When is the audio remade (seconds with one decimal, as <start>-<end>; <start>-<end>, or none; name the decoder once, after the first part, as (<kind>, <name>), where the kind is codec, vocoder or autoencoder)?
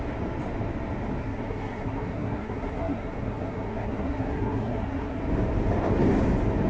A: 1.2-5.2 (codec, SNAC)